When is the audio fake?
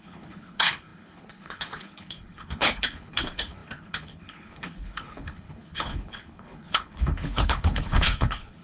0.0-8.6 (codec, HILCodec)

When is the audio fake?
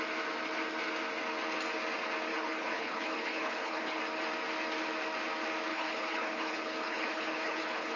2.3-4.0 (codec, HILCodec); 5.7-8.0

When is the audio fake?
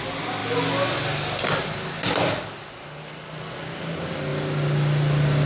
none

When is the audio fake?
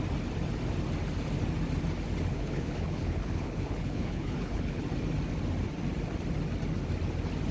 2.3-4.8 (codec, HILCodec)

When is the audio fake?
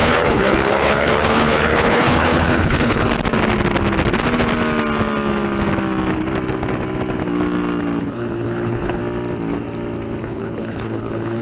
0.0-3.1 (codec, HILCodec); 8.0-9.0; 10.2-11.4